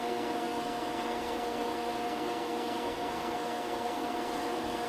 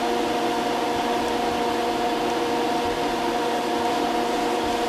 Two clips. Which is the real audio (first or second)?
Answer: second